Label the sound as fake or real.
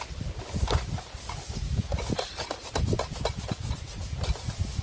real